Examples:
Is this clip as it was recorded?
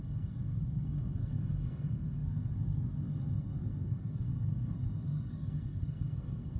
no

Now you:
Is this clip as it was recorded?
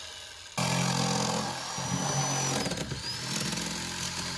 yes